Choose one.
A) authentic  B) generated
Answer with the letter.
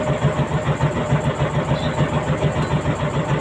A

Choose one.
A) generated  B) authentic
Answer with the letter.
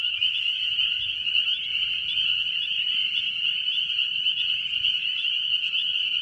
B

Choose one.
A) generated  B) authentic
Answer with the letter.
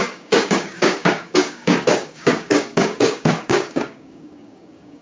A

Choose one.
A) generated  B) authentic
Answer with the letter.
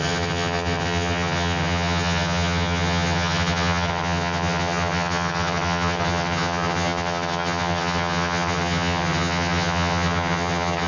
A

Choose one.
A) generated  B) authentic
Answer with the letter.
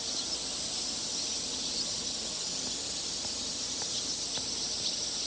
B